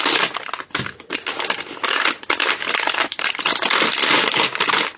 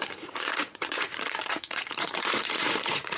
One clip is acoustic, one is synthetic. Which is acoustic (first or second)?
first